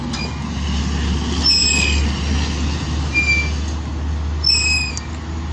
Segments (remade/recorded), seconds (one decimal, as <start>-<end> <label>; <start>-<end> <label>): 0.0-5.5 recorded